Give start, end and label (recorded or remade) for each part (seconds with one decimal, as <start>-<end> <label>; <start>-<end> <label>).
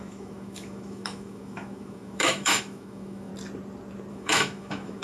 0.0-3.3 remade; 3.3-4.1 recorded; 4.1-5.0 remade